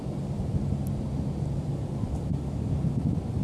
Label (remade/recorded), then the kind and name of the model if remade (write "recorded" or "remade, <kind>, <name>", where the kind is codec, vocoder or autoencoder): recorded